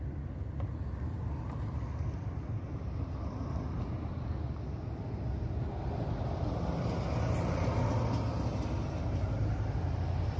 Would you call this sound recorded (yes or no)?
yes